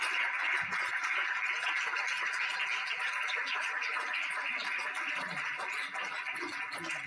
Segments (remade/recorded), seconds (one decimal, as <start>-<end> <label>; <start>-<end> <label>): 0.0-7.1 recorded